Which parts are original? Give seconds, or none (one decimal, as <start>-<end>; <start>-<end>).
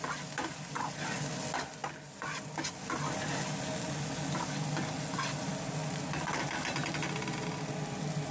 0.0-8.3